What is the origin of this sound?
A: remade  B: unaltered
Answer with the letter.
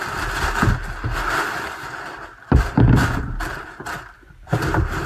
B